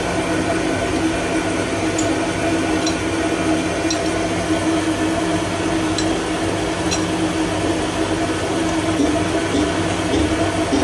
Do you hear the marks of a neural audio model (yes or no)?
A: no